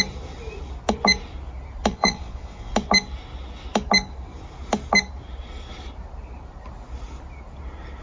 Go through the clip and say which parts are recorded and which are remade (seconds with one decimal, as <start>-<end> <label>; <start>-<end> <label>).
0.0-1.9 recorded; 1.9-2.7 remade; 2.7-8.0 recorded